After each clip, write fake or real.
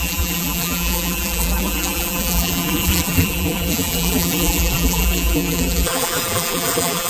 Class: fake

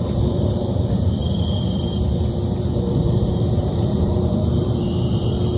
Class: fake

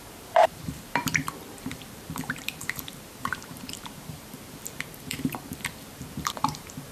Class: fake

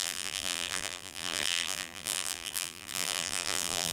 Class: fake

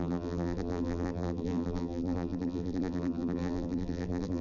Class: fake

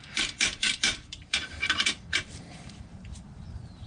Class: fake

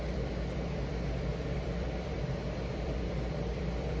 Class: fake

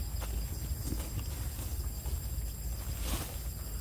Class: real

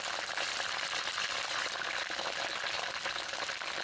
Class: real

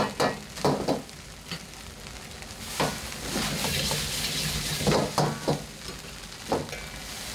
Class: real